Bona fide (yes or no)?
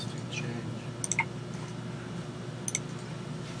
yes